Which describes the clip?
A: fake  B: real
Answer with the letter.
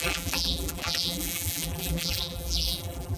A